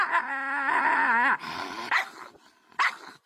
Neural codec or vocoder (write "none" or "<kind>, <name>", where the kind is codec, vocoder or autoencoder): none